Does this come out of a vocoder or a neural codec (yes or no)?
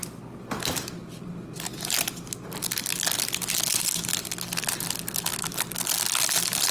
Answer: no